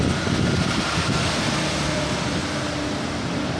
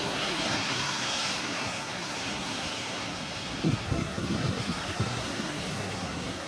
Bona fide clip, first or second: first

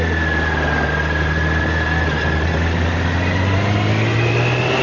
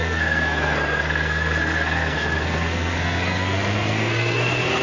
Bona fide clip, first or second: first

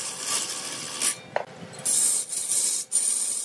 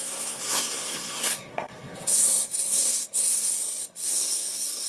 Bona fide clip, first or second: first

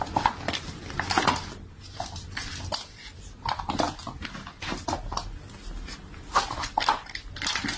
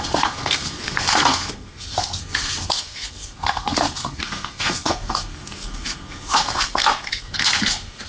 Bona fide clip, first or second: first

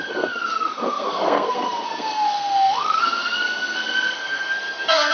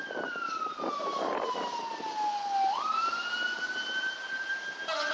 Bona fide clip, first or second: second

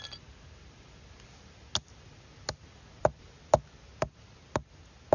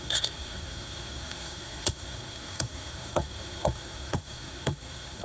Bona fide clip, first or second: first